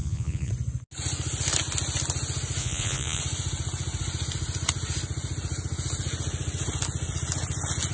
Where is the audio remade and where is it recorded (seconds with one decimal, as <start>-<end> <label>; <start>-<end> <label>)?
0.0-0.5 remade; 0.5-2.6 recorded; 2.6-3.2 remade; 3.2-7.9 recorded